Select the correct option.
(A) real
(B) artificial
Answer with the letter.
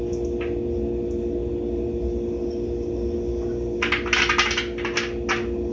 A